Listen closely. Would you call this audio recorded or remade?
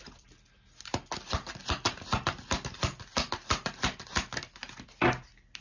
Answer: recorded